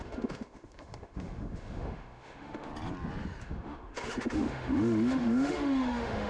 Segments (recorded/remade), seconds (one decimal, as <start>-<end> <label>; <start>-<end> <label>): 0.0-2.7 remade; 2.7-3.4 recorded; 3.4-6.3 remade